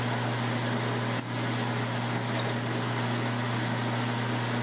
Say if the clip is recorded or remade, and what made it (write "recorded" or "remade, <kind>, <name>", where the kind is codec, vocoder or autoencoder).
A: recorded